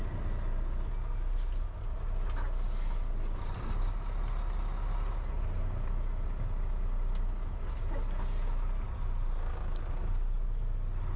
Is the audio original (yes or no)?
yes